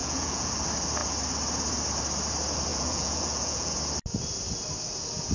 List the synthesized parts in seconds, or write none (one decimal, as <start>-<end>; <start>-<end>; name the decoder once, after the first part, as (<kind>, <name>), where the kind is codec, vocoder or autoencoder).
0.0-0.5 (vocoder, Vocos); 2.7-3.7